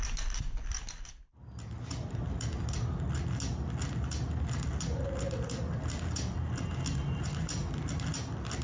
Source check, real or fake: real